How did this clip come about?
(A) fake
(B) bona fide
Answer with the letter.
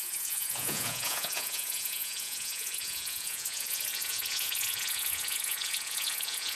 A